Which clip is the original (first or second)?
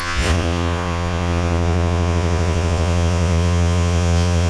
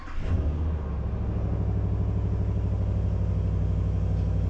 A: second